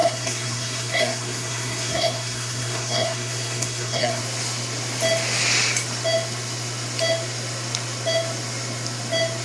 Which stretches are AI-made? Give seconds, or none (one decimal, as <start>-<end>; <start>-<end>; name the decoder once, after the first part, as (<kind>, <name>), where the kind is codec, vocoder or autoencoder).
0.0-4.2 (codec, SNAC)